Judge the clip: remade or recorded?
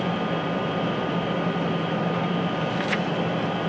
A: recorded